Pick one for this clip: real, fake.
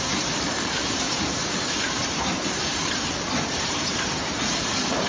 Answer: fake